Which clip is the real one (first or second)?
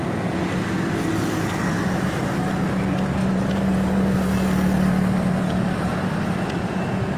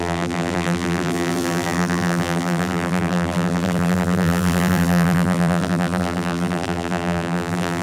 first